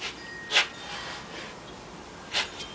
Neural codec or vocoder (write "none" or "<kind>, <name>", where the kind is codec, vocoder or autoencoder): none